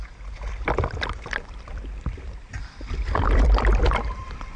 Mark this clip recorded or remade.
remade